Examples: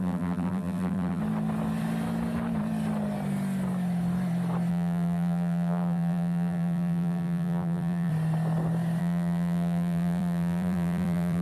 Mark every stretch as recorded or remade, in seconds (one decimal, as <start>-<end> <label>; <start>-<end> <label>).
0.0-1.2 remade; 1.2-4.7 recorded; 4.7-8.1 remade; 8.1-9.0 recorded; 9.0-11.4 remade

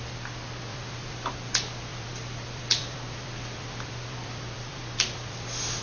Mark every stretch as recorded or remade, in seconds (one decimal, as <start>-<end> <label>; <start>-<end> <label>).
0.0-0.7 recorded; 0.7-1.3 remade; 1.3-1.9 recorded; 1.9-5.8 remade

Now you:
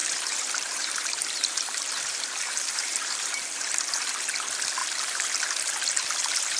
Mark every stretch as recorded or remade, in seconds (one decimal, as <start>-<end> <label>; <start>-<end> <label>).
0.0-4.0 remade; 4.0-4.8 recorded; 4.8-5.3 remade; 5.3-6.6 recorded